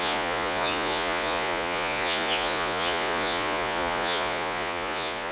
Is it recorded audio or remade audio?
remade